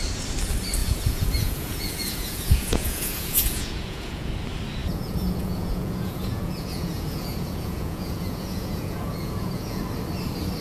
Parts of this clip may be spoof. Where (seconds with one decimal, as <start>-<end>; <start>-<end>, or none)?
0.8-4.3; 4.8-9.8